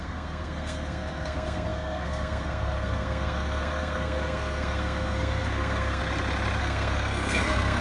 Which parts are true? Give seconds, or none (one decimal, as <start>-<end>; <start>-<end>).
6.0-6.6

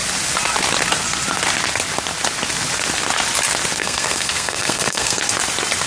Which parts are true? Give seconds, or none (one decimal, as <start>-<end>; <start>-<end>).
0.0-3.8; 5.2-5.9

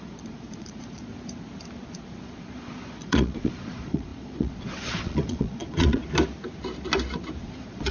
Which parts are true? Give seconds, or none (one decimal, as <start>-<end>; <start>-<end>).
1.1-2.2; 6.0-7.4

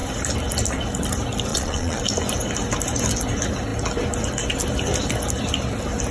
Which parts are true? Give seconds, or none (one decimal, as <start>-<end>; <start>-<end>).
0.0-1.5; 2.0-6.1

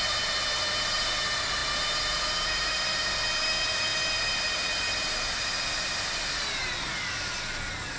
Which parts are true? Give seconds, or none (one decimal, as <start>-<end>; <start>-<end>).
0.0-8.0

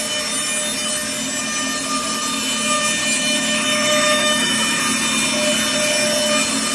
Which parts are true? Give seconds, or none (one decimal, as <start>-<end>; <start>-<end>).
0.0-3.0; 4.8-6.7